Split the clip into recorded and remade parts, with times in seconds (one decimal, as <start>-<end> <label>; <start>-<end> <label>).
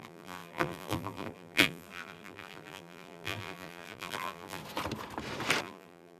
0.0-4.6 remade; 4.6-5.6 recorded; 5.6-6.2 remade